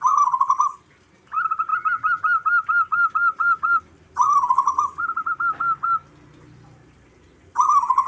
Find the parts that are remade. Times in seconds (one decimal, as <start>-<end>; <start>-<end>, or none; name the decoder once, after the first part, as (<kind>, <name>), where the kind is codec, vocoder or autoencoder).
none

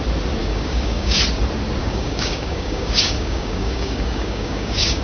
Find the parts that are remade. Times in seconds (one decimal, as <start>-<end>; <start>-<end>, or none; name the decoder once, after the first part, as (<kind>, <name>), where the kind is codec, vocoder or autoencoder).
0.4-1.2 (codec, DAC); 1.8-5.0

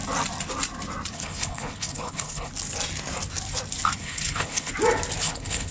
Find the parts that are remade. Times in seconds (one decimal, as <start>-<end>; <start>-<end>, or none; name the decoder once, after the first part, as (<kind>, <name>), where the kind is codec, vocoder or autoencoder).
1.1-2.5 (codec, HILCodec); 4.0-4.7; 5.2-5.7

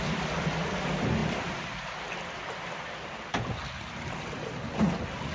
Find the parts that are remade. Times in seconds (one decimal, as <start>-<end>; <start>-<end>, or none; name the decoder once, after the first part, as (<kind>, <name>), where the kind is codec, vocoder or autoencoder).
none

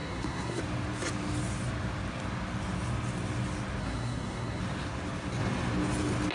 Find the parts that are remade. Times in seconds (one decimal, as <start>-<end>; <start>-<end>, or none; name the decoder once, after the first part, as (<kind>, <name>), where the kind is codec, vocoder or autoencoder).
0.0-0.6 (codec, SNAC); 3.8-4.6

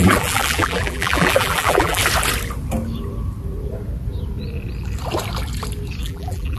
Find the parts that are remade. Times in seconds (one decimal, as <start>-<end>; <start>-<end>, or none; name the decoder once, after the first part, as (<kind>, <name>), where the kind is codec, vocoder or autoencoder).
0.0-2.0 (vocoder, BigVGAN v2); 6.0-6.6

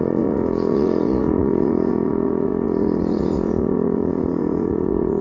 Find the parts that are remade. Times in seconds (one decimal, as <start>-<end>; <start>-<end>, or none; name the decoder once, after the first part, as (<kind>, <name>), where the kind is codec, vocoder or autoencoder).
0.0-5.2 (vocoder, Vocos)